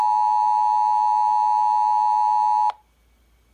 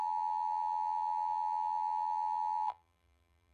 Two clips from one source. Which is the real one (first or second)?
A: first